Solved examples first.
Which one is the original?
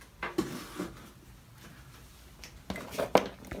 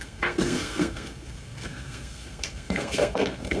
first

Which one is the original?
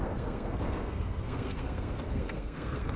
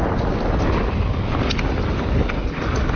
second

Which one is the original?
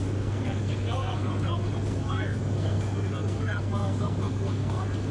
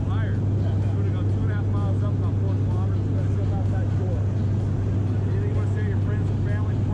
second